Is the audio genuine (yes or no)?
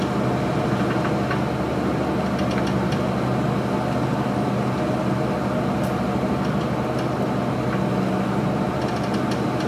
yes